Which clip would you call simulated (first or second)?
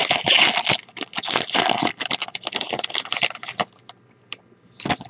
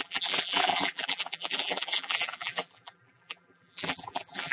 second